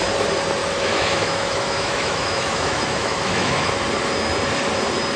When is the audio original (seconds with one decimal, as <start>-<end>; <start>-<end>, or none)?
0.0-0.6; 3.7-5.2